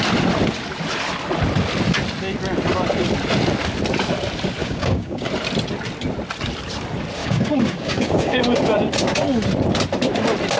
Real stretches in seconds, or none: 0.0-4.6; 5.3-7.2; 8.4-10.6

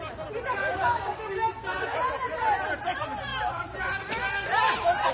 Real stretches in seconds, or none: 0.0-0.6; 1.5-5.1

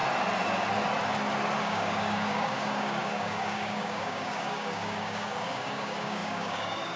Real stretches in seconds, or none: 0.0-1.6

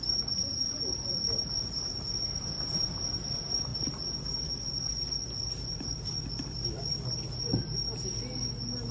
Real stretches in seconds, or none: 0.0-8.9